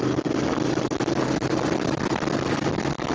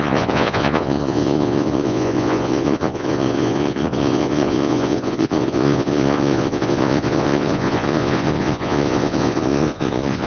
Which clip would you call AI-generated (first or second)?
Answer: second